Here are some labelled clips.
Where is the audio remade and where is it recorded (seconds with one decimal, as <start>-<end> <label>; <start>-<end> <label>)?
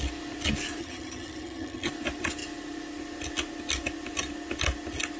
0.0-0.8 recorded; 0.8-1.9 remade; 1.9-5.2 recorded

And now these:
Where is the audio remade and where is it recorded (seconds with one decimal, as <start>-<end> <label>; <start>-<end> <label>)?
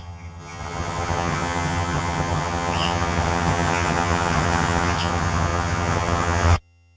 0.0-7.0 remade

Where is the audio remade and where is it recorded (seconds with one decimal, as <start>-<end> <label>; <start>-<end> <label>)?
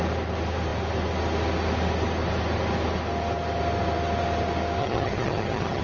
0.0-4.8 recorded; 4.8-5.8 remade